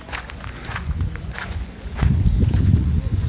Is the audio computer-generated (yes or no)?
yes